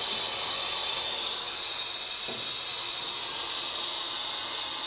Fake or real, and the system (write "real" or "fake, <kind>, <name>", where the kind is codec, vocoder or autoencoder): real